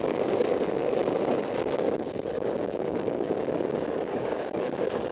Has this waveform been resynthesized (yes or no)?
yes